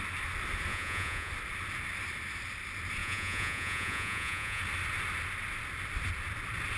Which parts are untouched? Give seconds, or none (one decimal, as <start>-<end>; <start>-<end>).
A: 0.0-0.7; 1.3-3.0; 4.6-6.8